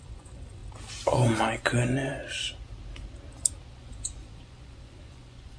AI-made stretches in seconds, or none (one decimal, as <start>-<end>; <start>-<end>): 0.0-0.6; 1.1-2.2; 3.7-5.6